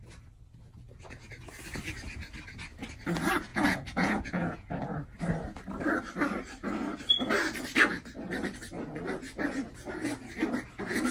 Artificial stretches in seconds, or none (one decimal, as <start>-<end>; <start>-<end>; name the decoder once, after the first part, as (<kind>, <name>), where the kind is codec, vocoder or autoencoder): 3.5-4.7 (vocoder, Vocos)